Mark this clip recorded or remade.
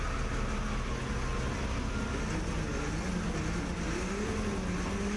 recorded